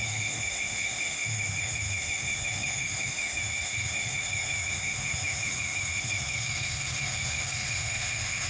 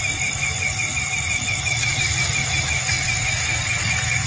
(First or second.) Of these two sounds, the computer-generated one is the first